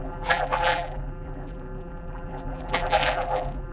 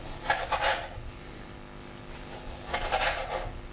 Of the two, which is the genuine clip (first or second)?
second